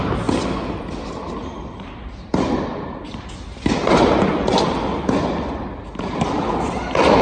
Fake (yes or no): no